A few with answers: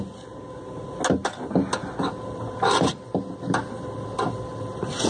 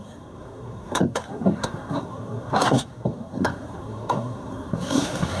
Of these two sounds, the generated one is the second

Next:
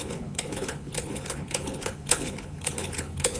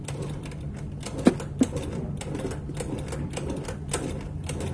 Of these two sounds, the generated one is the first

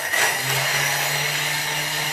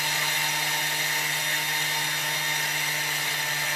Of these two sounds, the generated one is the first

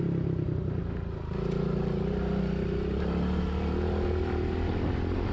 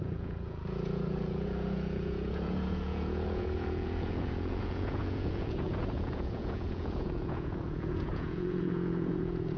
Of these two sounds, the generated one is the second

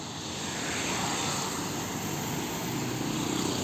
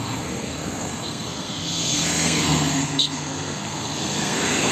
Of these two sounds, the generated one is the second